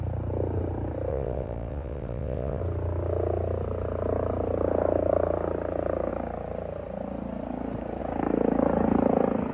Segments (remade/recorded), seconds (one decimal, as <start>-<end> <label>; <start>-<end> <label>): 0.0-1.1 recorded; 1.1-2.6 remade; 2.6-9.5 recorded